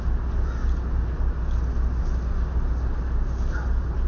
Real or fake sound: real